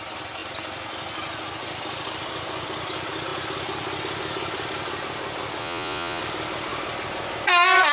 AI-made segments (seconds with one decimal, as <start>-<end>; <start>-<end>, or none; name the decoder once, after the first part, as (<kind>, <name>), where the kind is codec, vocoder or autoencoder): 5.6-6.2 (vocoder, Vocos)